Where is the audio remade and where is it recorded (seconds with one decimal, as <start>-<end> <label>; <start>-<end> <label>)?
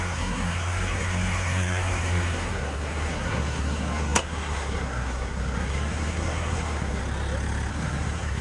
0.0-7.0 remade; 7.0-7.7 recorded; 7.7-8.4 remade